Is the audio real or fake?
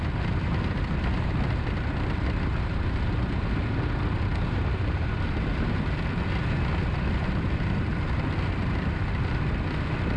real